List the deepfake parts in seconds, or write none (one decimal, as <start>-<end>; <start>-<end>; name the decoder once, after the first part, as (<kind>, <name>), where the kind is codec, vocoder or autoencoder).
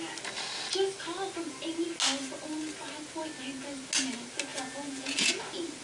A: 4.5-5.3 (vocoder, Vocos)